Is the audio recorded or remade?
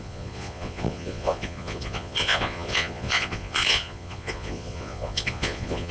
remade